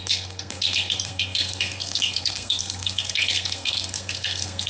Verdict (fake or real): fake